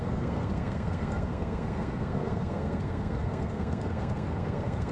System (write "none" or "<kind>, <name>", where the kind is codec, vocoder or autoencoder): codec, SNAC